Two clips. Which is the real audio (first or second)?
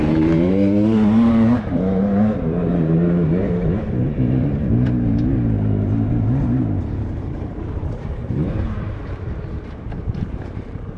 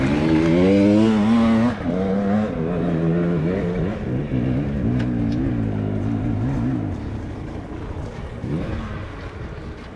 second